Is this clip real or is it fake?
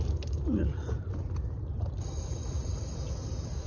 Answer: fake